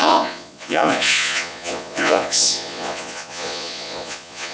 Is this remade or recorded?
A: remade